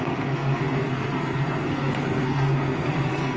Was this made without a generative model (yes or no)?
no